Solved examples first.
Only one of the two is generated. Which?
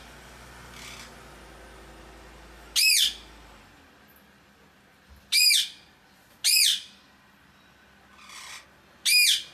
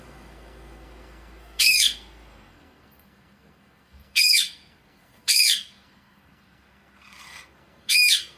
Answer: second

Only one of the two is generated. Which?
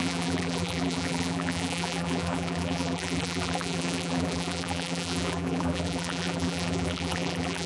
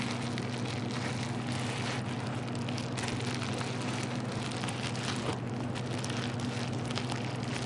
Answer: first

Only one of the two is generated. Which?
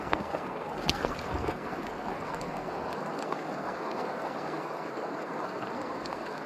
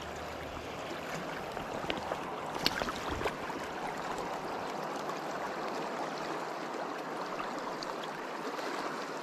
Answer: first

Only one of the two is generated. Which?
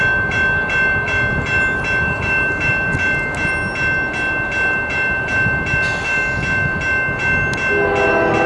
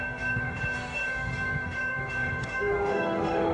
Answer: second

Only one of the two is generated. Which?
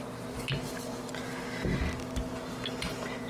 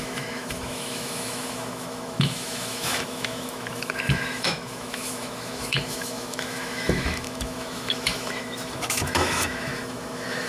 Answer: second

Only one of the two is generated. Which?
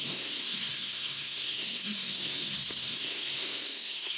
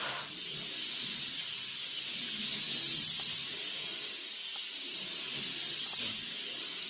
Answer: first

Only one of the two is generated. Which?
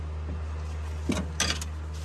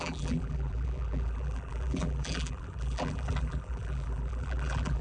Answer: second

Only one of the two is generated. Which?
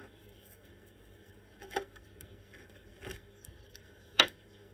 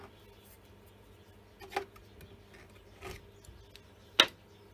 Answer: first